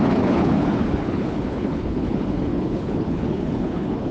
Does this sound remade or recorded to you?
remade